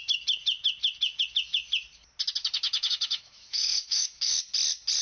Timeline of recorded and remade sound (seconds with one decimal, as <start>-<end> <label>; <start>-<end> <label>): 0.0-2.4 recorded; 2.4-4.3 remade; 4.3-5.0 recorded

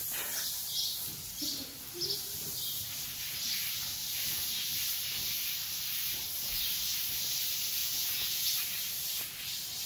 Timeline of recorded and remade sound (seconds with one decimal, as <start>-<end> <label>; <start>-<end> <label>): 0.0-7.8 recorded; 7.8-8.5 remade; 8.5-9.9 recorded

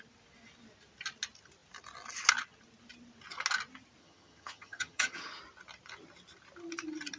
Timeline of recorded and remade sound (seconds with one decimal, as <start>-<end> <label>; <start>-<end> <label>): 0.0-4.0 recorded; 4.0-5.4 remade; 5.4-7.2 recorded

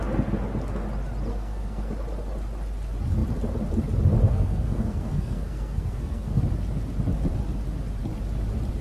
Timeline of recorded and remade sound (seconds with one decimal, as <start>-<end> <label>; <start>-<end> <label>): 0.0-1.3 recorded; 1.3-1.9 remade; 1.9-4.2 recorded; 4.2-6.4 remade; 6.4-8.8 recorded

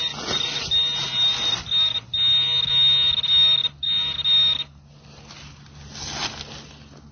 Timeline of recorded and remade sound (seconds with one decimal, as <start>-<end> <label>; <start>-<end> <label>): 0.0-7.1 recorded

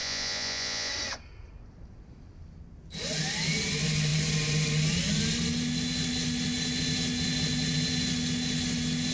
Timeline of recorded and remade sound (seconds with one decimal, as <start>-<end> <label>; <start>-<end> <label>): 0.0-0.9 remade; 0.9-9.1 recorded

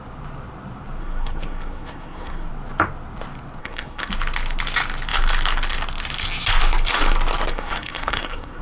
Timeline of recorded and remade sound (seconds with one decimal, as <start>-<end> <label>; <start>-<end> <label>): 0.0-1.0 recorded; 1.0-2.5 remade; 2.5-3.6 recorded; 3.6-4.1 remade; 4.1-7.5 recorded; 7.5-8.6 remade

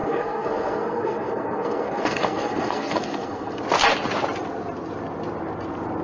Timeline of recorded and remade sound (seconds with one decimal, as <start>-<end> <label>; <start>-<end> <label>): 0.0-3.6 remade; 3.6-6.0 recorded